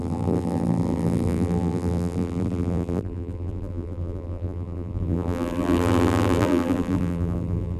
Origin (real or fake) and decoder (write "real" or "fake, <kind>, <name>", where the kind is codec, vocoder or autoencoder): fake, vocoder, BigVGAN v2